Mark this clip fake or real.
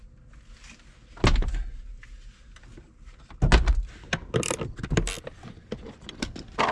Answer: real